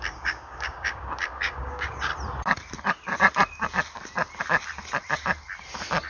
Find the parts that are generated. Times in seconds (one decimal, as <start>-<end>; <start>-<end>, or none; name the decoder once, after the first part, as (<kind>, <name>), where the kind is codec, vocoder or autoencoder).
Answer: 0.0-2.1 (codec, DAC)